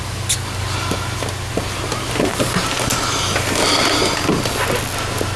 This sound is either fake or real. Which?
real